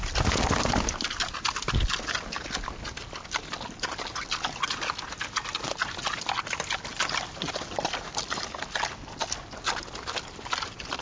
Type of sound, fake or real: real